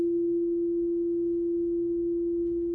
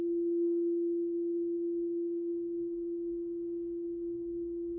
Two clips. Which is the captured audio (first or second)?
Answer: first